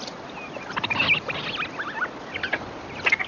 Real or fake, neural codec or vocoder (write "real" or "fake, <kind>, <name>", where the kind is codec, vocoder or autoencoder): real